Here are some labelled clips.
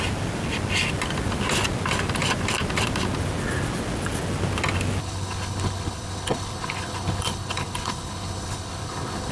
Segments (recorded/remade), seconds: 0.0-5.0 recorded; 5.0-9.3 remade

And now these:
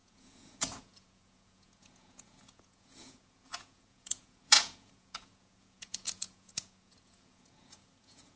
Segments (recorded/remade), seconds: 0.0-8.4 remade